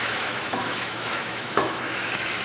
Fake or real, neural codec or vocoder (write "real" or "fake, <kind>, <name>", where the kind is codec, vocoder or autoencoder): fake, autoencoder, DAC-VAE